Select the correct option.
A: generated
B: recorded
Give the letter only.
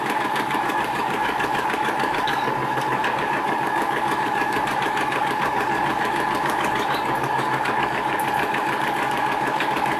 A